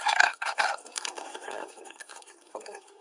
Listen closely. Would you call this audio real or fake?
fake